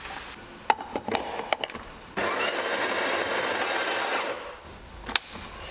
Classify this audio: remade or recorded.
recorded